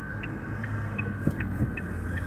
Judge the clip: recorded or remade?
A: remade